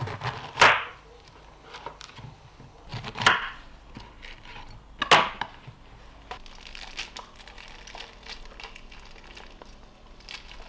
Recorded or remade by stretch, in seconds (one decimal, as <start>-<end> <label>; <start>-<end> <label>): 0.0-2.9 recorded; 2.9-3.9 remade; 3.9-10.7 recorded